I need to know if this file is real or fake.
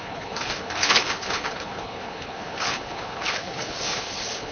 fake